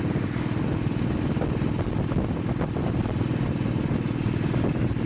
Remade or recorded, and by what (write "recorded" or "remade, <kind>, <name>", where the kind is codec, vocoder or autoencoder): recorded